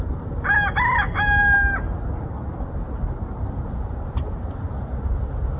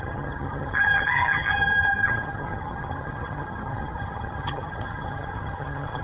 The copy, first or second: second